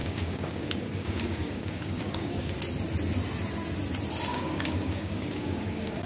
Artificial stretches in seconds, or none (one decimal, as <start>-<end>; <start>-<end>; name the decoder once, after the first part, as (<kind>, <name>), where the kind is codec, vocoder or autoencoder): 0.0-2.5 (codec, DAC); 4.3-6.1